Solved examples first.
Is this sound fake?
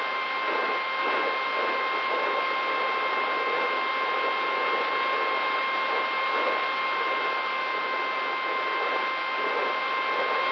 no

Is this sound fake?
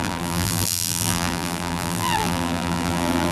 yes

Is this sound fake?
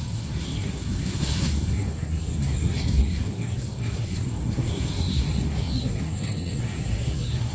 yes